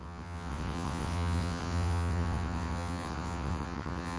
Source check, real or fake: fake